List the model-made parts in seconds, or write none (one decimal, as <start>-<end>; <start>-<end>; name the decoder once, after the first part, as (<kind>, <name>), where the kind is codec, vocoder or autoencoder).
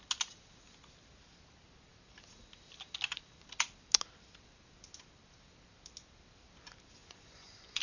7.0-7.8 (vocoder, Vocos)